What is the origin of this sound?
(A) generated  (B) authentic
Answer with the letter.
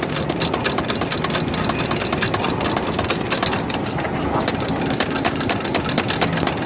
B